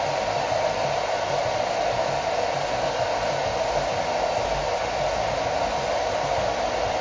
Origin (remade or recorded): recorded